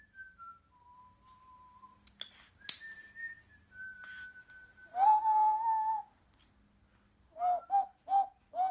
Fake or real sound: real